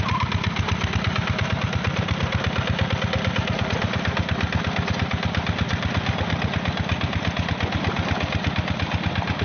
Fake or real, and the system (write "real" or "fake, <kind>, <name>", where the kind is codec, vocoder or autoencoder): real